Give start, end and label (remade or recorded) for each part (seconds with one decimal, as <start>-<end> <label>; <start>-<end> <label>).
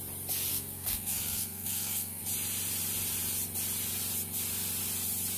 0.0-0.5 recorded; 0.5-2.2 remade; 2.2-5.4 recorded